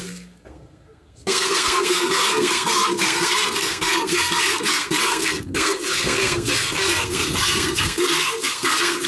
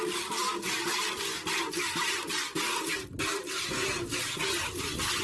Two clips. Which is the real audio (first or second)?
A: second